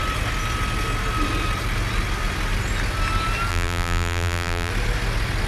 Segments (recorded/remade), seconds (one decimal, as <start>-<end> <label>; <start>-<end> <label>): 0.0-3.5 recorded; 3.5-4.7 remade; 4.7-5.5 recorded